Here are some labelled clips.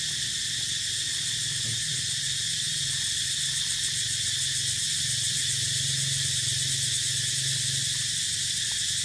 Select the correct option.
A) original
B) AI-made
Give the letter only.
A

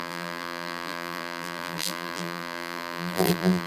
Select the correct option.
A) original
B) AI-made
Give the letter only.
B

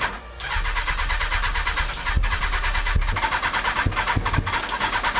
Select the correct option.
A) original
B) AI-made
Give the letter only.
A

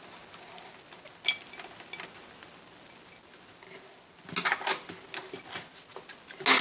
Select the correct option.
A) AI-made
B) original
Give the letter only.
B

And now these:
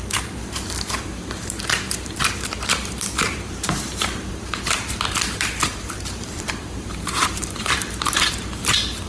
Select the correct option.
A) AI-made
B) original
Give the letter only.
A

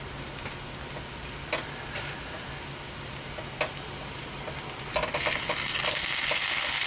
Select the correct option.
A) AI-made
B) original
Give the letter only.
B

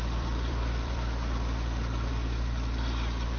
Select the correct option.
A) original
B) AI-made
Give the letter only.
B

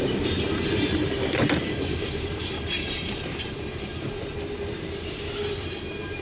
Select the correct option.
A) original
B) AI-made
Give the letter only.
B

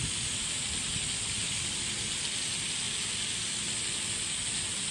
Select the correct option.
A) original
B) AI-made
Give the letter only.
A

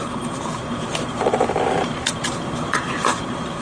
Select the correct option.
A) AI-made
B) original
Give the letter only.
A